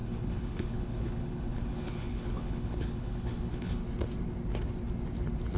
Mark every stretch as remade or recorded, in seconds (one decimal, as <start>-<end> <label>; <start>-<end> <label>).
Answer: 0.0-3.8 remade; 3.8-5.6 recorded